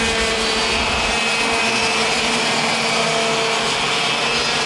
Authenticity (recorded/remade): recorded